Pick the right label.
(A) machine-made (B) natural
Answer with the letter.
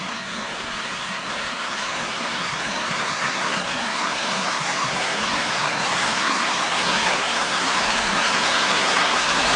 A